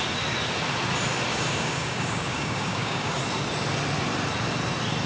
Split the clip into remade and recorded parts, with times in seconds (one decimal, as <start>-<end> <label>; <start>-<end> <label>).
0.0-1.3 recorded; 1.3-3.2 remade; 3.2-5.1 recorded